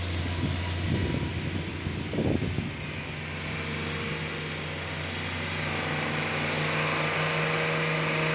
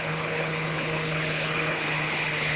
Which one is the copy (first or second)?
second